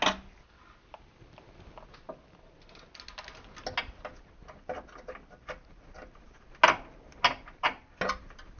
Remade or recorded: recorded